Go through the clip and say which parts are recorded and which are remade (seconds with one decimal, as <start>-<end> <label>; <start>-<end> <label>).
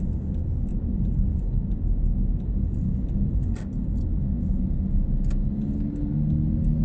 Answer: 0.0-0.7 recorded; 0.7-1.4 remade; 1.4-6.8 recorded